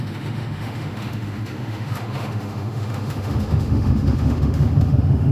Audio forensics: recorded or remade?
remade